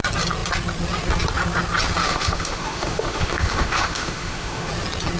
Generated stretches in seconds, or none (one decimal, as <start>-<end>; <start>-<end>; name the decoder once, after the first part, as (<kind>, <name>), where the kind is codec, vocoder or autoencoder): 2.0-4.7 (autoencoder, DAC-VAE)